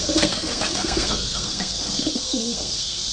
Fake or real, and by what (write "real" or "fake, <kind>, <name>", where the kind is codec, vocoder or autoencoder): fake, codec, SNAC